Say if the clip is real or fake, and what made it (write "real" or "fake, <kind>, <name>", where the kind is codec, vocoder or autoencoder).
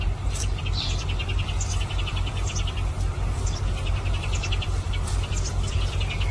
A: real